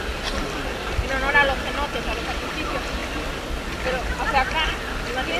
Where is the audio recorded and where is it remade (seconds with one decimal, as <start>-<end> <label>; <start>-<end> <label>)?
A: 0.0-5.4 recorded